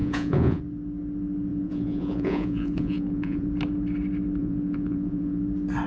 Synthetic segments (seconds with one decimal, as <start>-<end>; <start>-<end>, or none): 0.0-0.6; 1.5-3.5; 4.4-5.4